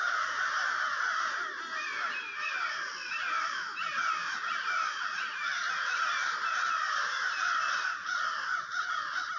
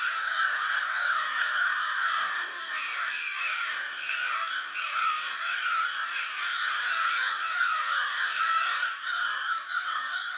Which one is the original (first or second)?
first